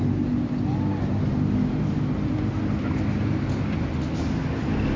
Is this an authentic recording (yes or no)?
yes